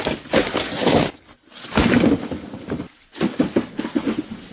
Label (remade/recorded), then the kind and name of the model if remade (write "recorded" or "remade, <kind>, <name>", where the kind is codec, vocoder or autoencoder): recorded